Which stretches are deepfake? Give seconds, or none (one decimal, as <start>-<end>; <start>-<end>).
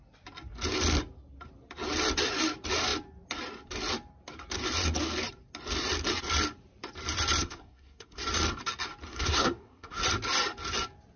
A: 7.4-8.2; 9.1-10.0